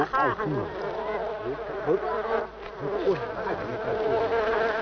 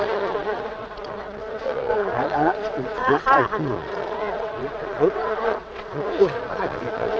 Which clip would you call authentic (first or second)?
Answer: first